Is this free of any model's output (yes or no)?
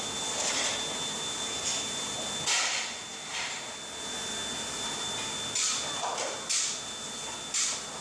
yes